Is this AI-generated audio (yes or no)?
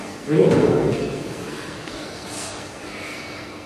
yes